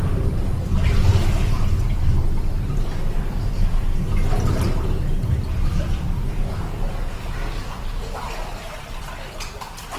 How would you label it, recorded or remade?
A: recorded